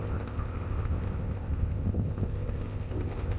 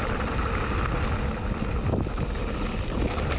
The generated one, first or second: first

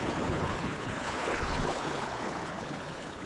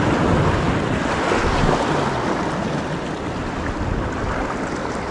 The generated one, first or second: first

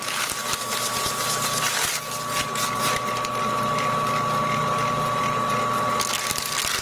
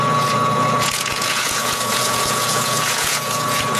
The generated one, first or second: second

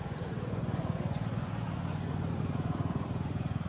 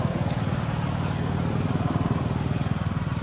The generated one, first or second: first